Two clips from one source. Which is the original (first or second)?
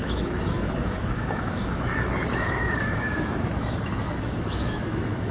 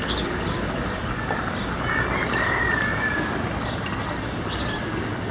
second